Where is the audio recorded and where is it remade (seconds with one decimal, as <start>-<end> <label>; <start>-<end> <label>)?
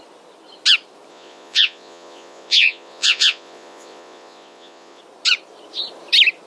0.0-1.1 recorded; 1.1-5.0 remade; 5.0-6.5 recorded